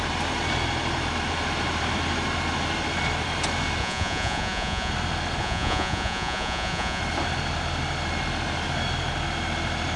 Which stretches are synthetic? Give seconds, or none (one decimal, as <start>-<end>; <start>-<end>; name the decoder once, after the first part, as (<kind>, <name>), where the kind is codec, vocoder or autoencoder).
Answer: 3.8-4.9 (vocoder, Vocos); 5.4-7.0